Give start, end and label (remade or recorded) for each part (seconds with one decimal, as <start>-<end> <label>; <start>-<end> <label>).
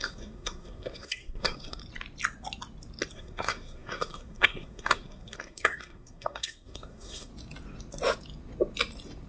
0.0-1.8 remade; 1.8-3.1 recorded; 3.1-7.3 remade; 7.3-9.3 recorded